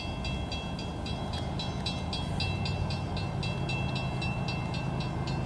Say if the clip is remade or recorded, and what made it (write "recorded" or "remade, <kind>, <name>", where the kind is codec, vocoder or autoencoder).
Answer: recorded